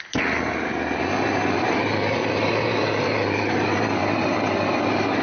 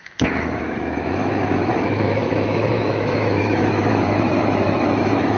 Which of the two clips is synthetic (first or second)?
second